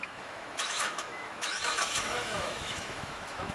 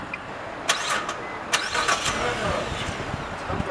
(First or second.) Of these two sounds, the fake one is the first